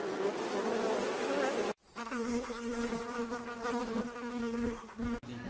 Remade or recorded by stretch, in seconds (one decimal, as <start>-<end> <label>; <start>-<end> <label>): 0.0-2.0 recorded; 2.0-2.9 remade; 2.9-4.4 recorded; 4.4-5.0 remade; 5.0-5.5 recorded